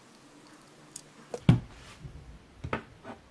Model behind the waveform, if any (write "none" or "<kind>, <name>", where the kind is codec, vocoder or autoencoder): none